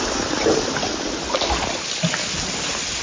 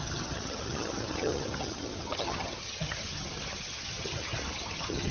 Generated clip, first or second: second